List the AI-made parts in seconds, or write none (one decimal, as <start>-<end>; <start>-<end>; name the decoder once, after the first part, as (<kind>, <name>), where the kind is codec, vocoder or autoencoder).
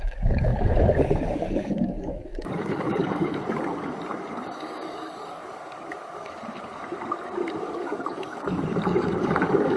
0.0-6.8 (codec, DAC); 7.6-9.8